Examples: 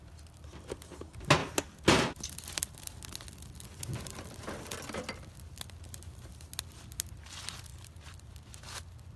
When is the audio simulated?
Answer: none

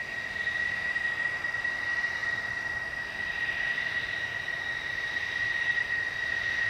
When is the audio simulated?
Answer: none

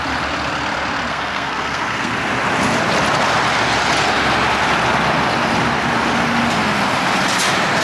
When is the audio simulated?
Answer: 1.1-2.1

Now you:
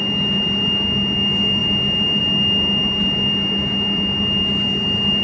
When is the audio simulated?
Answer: none